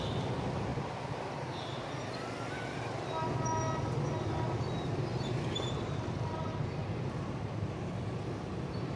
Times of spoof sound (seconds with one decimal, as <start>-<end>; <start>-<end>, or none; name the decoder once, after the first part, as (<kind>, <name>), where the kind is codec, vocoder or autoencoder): 0.7-1.8 (vocoder, BigVGAN v2); 5.1-7.8